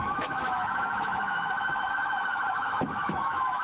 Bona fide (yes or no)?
no